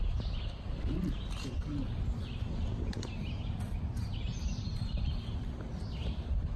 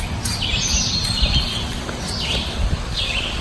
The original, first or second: second